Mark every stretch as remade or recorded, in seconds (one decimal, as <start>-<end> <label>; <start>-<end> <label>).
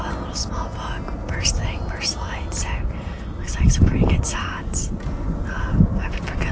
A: 0.0-1.6 recorded; 1.6-4.1 remade; 4.1-6.5 recorded